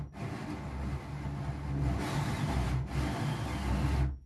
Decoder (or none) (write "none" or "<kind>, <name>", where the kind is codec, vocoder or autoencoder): none